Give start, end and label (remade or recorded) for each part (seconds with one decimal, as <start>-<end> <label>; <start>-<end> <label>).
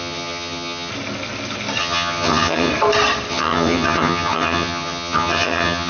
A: 0.0-0.9 remade; 0.9-1.8 recorded; 1.8-2.7 remade; 2.7-3.3 recorded; 3.3-5.9 remade